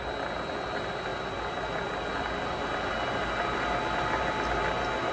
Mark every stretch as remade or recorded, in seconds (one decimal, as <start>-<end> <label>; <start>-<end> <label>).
0.0-5.1 recorded